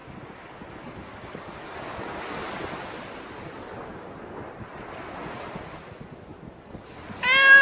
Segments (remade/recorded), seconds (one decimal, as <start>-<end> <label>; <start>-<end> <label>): 0.0-7.6 recorded